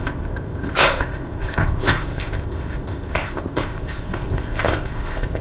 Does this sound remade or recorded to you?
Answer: remade